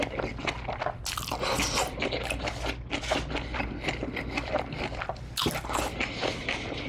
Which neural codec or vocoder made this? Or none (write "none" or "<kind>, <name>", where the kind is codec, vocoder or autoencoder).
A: none